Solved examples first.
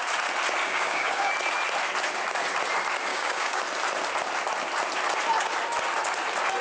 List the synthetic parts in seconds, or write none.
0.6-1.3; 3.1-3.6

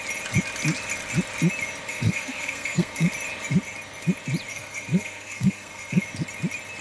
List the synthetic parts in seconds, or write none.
1.9-3.1; 4.5-6.0

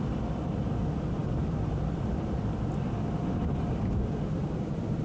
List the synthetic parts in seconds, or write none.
1.2-4.2